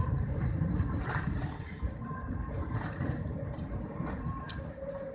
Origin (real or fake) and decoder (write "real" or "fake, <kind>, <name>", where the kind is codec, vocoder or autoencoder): fake, vocoder, BigVGAN v2